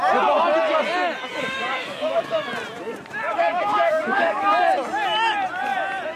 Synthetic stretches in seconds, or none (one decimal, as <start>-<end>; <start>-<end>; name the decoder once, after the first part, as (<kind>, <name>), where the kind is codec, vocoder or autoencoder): 1.3-2.5 (codec, DAC); 3.3-4.4